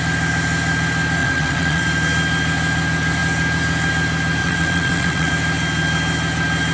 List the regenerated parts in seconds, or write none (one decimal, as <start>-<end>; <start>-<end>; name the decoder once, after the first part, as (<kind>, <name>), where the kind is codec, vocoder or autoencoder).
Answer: 1.2-1.8 (vocoder, WaveNeXt); 4.4-5.3